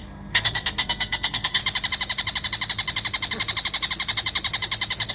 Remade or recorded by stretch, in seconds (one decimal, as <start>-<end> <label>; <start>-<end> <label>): 0.0-1.6 remade; 1.6-5.1 recorded